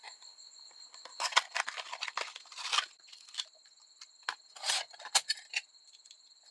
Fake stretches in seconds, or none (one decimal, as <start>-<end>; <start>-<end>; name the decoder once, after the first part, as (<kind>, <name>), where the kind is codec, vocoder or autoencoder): none